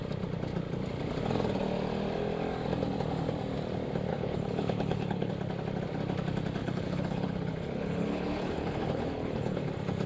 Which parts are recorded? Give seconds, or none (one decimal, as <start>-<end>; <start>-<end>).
0.0-4.1; 5.3-6.6; 9.7-10.1